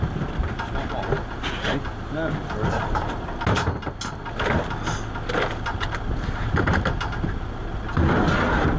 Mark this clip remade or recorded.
recorded